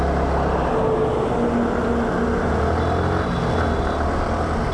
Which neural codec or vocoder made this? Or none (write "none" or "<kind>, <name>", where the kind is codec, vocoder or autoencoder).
none